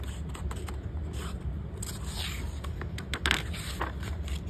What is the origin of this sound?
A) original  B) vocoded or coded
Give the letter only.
A